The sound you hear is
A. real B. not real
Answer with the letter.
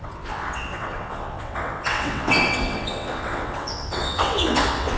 B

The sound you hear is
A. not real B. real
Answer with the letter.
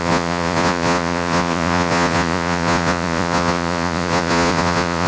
A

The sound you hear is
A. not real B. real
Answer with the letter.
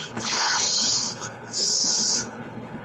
A